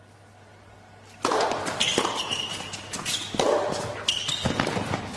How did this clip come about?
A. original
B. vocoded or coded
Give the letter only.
B